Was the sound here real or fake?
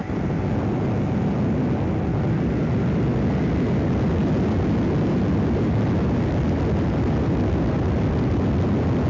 real